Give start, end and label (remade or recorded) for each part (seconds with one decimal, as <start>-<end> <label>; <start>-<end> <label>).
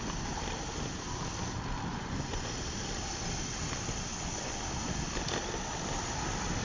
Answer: 0.0-1.9 recorded; 1.9-2.5 remade; 2.5-4.1 recorded; 4.1-4.6 remade; 4.6-6.6 recorded